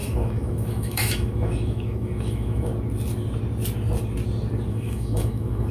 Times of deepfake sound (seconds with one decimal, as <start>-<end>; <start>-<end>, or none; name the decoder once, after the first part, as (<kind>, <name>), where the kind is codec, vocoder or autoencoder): 0.0-2.7 (autoencoder, DAC-VAE); 4.7-5.7